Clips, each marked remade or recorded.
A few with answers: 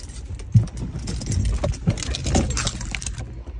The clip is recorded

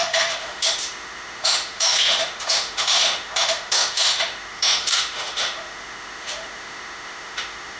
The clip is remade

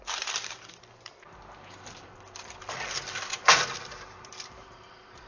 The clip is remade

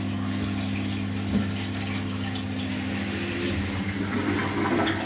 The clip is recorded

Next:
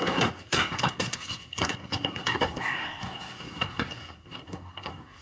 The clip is remade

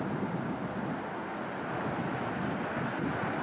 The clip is recorded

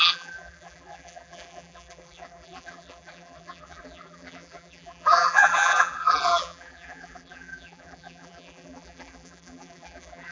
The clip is remade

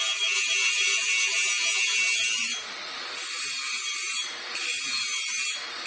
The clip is recorded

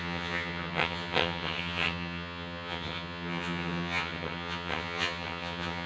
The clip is remade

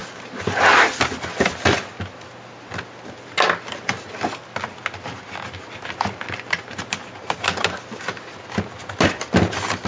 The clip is recorded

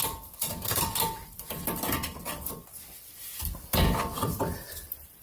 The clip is remade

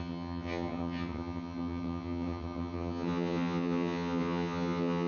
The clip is remade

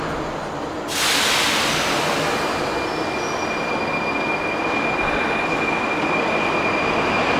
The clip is recorded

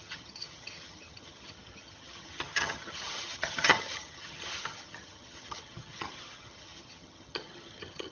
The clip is remade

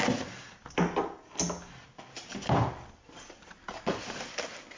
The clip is recorded